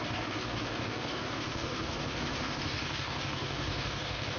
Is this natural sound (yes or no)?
no